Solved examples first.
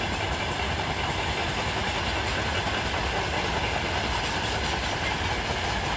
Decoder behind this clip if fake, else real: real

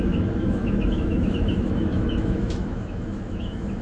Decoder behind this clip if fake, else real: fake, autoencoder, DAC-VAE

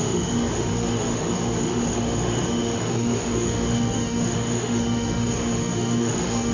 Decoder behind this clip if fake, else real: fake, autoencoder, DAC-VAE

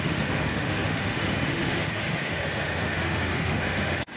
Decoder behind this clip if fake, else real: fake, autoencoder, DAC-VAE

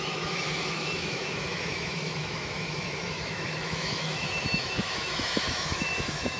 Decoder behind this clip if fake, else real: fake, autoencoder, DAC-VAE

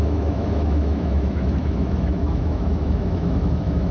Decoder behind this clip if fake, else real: fake, autoencoder, DAC-VAE